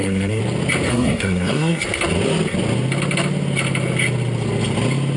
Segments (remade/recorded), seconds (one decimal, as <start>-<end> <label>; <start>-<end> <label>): 0.0-0.4 remade; 0.4-0.9 recorded; 0.9-1.8 remade; 1.8-5.2 recorded